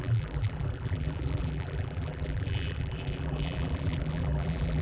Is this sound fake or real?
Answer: fake